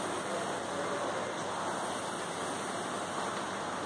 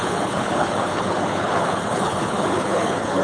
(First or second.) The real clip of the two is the first